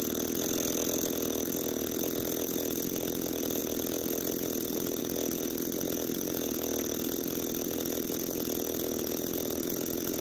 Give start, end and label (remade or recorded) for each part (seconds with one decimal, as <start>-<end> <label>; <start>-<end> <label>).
0.0-3.6 recorded; 3.6-5.0 remade; 5.0-10.2 recorded